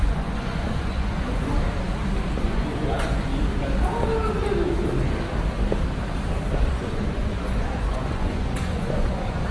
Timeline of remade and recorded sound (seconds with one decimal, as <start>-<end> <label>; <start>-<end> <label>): 0.0-1.5 remade; 1.5-2.4 recorded; 2.4-3.3 remade; 3.3-6.7 recorded; 6.7-9.5 remade